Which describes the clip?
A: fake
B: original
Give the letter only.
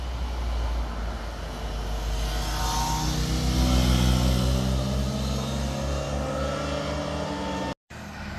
B